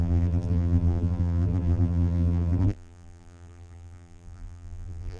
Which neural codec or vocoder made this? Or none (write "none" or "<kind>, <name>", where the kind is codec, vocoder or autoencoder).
vocoder, BigVGAN v2